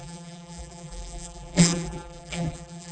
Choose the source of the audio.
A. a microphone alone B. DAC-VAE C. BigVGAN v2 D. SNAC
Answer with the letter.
C